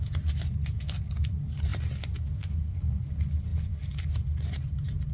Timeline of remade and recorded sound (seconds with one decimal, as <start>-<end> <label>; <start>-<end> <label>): 0.0-5.1 recorded

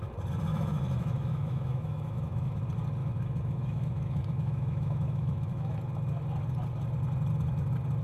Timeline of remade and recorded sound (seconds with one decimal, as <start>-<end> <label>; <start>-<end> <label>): 0.0-0.5 recorded; 0.5-2.6 remade; 2.6-3.0 recorded; 3.0-5.8 remade; 5.8-8.0 recorded

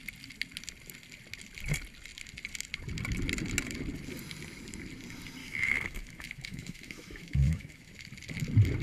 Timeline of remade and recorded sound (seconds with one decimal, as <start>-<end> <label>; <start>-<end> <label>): 0.0-5.4 recorded; 5.4-7.9 remade; 7.9-8.8 recorded